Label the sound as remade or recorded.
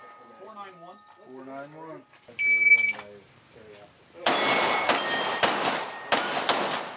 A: recorded